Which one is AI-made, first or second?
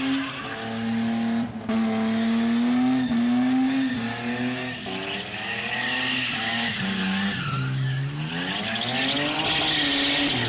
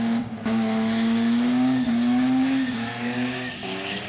second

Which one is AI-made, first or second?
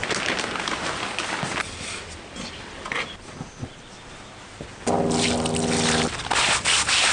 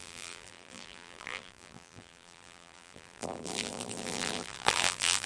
second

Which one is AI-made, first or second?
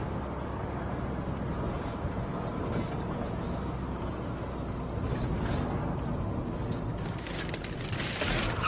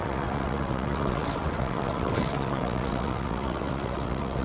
second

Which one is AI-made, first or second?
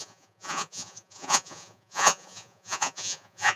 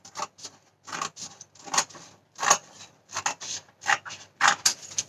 first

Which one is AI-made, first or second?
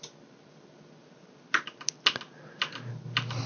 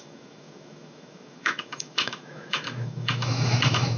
second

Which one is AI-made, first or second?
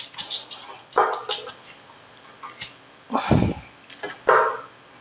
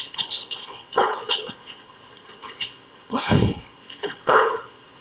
second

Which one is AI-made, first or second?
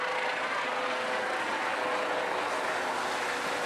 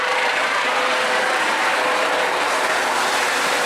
second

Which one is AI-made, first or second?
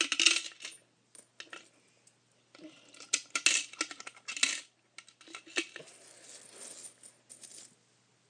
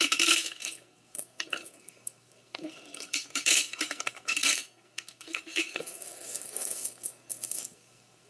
second